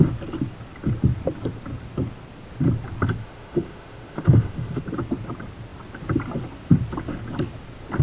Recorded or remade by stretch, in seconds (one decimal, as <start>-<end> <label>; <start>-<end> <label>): 0.0-3.2 recorded; 3.2-4.8 remade; 4.8-8.0 recorded